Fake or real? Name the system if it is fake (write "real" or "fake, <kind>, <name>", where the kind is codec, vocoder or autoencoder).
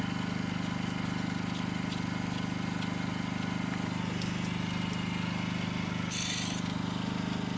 real